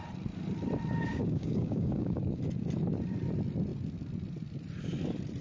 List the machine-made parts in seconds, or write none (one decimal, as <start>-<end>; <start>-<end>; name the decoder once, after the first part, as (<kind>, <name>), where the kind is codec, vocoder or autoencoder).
1.1-2.4 (codec, DAC)